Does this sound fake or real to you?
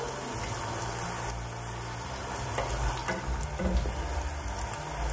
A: real